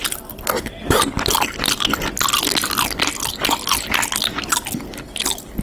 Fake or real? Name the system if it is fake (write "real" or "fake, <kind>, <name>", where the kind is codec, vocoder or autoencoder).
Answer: real